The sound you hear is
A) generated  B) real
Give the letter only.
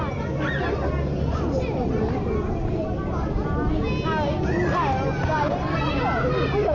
B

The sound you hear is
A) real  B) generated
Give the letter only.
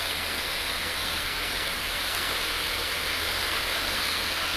B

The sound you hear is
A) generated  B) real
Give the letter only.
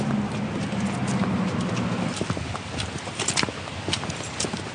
B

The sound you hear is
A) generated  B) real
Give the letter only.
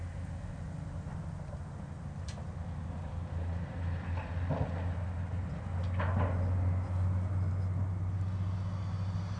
B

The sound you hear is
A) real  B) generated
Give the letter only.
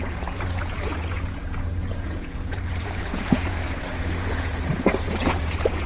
B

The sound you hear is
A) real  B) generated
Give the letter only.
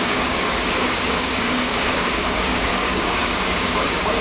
B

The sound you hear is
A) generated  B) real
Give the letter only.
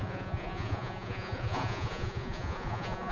A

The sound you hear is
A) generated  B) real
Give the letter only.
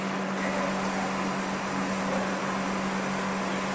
B